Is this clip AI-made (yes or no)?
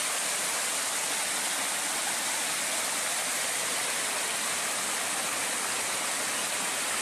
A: no